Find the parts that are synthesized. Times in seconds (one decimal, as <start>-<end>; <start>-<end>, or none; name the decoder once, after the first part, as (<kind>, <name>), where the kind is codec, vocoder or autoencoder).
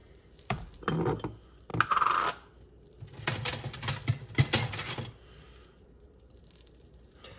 0.0-1.2 (vocoder, BigVGAN v2)